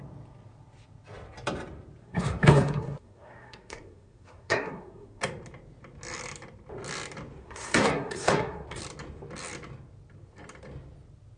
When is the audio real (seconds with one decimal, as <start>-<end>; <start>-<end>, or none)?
0.0-2.0; 5.2-7.4; 8.8-11.4